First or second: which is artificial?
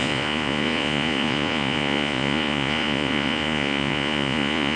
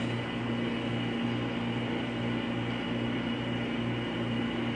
first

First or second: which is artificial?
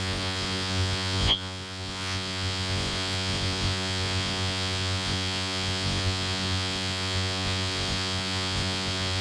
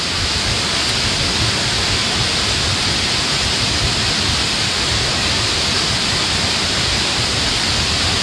first